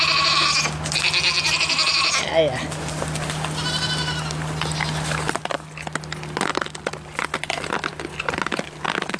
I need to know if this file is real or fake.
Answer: real